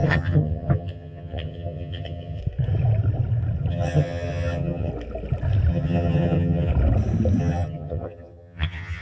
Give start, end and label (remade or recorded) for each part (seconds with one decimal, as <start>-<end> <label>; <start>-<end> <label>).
0.0-2.4 remade; 2.4-3.7 recorded; 3.7-4.9 remade; 4.9-5.7 recorded; 5.7-6.7 remade; 6.7-7.4 recorded; 7.4-9.0 remade